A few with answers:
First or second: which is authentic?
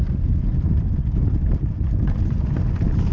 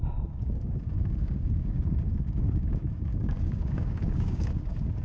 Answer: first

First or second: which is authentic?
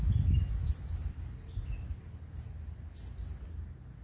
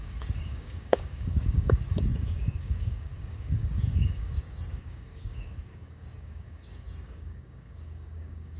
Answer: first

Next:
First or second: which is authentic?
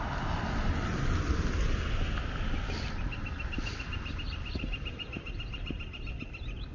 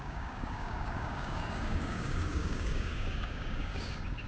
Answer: first